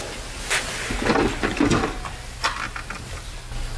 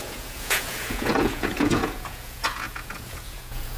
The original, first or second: first